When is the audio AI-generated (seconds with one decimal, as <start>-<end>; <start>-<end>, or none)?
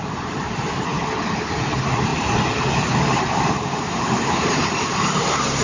0.0-0.9; 1.5-5.6